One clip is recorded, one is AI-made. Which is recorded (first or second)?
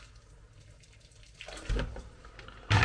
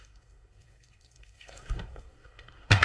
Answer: first